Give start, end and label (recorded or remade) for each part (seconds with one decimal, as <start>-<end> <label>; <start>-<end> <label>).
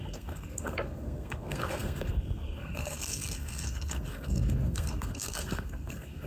0.0-6.3 remade